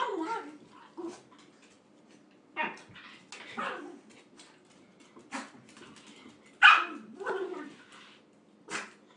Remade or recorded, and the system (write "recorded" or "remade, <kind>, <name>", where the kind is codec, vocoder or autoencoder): recorded